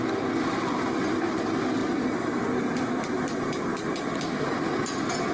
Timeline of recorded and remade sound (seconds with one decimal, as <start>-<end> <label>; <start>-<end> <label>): 0.0-5.3 recorded